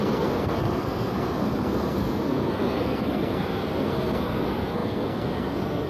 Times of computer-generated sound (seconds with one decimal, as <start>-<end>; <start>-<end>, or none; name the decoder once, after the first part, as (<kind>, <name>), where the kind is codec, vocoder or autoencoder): 0.0-5.9 (codec, SNAC)

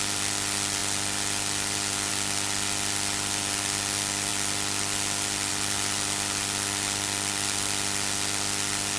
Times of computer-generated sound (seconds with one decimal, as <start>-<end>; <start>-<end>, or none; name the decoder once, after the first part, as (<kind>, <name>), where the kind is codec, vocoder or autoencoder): none

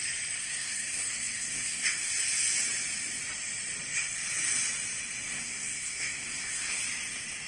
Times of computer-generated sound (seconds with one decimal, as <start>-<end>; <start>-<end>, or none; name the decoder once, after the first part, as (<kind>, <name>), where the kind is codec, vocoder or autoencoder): 0.4-2.1 (codec, SNAC); 5.3-6.8

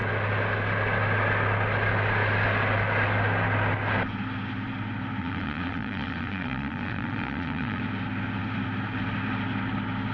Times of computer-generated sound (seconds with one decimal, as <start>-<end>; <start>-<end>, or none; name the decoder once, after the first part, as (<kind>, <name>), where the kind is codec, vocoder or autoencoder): 5.2-7.8 (vocoder, Vocos)

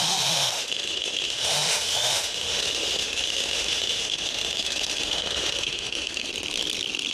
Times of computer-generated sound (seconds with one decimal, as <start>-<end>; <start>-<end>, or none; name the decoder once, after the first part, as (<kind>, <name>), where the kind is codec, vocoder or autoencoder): 0.0-6.3 (autoencoder, DAC-VAE)

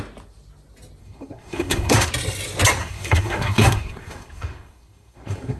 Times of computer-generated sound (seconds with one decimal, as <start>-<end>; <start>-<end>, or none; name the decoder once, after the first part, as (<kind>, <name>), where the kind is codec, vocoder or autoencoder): 1.0-2.1 (codec, SNAC); 2.8-5.6